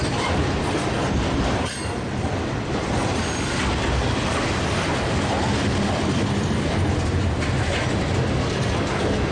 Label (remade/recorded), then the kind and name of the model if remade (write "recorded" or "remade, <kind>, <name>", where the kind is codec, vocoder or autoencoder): recorded